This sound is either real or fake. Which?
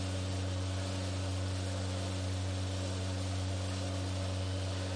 real